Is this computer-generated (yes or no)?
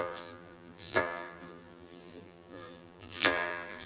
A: yes